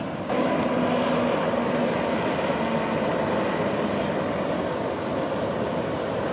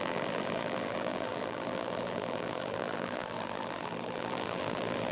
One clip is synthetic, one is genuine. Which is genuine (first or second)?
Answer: first